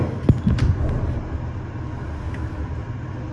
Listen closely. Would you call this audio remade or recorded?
recorded